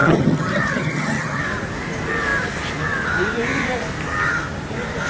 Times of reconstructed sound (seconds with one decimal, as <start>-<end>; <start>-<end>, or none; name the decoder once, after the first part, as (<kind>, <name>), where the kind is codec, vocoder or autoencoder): 0.0-1.4 (vocoder, HiFi-GAN)